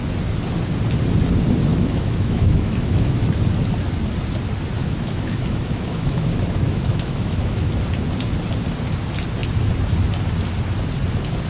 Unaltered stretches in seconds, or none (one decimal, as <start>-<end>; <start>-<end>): 0.0-1.7; 3.3-4.8; 7.7-11.5